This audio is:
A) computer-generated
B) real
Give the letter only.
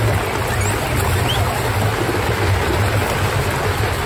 B